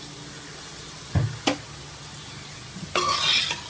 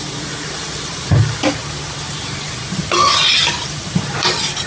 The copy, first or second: second